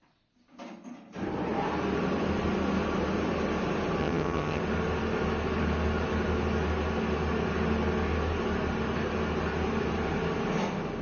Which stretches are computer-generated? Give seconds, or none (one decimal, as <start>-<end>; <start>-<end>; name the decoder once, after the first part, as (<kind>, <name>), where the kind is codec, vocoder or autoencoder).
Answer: 4.0-4.6 (vocoder, HiFi-GAN)